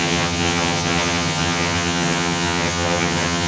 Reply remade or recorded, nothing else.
remade